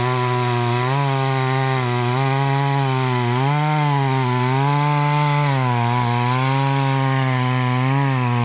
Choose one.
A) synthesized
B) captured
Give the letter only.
B